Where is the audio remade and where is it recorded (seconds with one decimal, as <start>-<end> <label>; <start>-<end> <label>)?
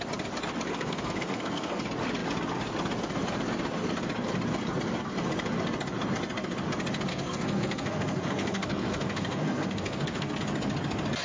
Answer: 0.0-0.7 recorded; 0.7-1.8 remade; 1.8-7.1 recorded; 7.1-10.4 remade; 10.4-11.2 recorded